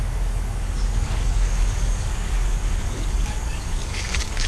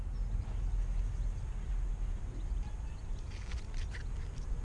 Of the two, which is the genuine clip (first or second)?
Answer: second